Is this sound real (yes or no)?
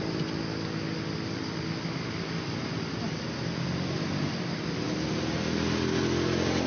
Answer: yes